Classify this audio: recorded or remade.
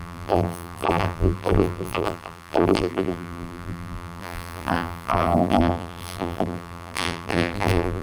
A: remade